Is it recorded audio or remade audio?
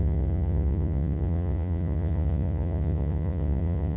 remade